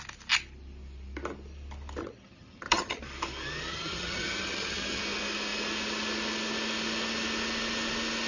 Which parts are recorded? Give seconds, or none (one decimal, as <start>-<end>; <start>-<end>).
0.0-2.0; 3.0-3.7; 5.0-8.3